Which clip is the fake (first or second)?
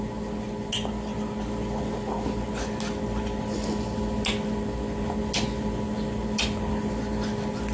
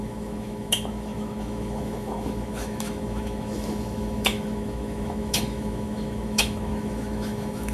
second